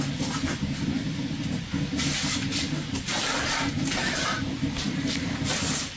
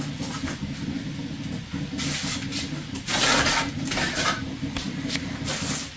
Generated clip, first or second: first